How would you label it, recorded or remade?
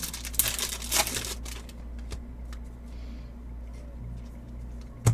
recorded